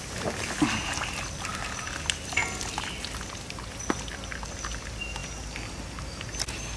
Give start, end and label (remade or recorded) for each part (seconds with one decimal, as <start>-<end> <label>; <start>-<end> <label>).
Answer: 0.0-6.8 recorded